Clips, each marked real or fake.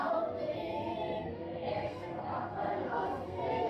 fake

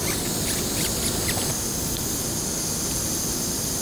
real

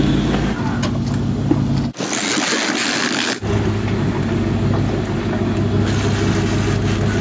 real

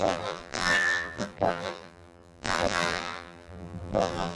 fake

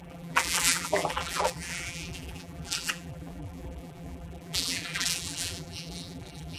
fake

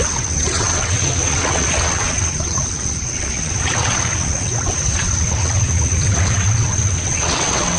fake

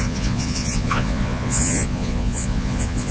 fake